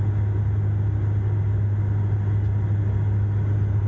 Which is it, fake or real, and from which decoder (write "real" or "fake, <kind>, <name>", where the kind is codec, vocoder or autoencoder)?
real